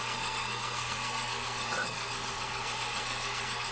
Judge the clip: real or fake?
fake